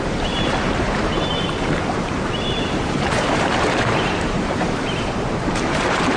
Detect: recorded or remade remade